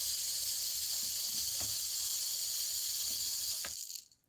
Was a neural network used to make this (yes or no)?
no